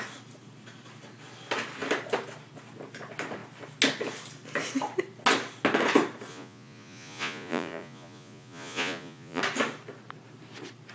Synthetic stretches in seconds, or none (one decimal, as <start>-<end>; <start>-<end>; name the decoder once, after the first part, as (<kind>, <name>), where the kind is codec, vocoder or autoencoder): 6.3-9.4 (vocoder, Vocos)